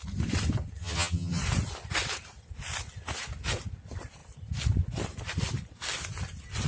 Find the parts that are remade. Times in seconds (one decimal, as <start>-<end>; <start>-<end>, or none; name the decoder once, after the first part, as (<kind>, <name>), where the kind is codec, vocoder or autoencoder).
0.8-1.4 (vocoder, HiFi-GAN)